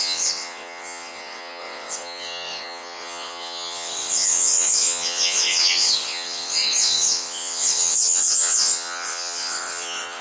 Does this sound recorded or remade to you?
remade